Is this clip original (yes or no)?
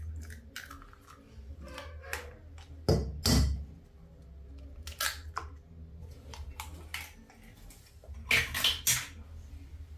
yes